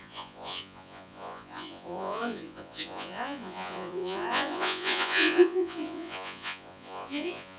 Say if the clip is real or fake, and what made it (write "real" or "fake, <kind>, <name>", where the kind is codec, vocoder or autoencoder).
fake, vocoder, Vocos